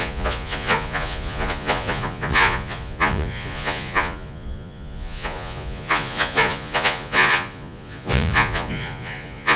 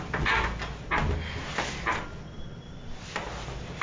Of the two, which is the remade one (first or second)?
first